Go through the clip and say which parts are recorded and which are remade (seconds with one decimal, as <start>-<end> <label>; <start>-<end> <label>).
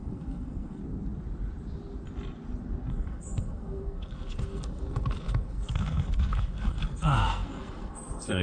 0.0-0.8 remade; 0.8-2.9 recorded; 2.9-8.4 remade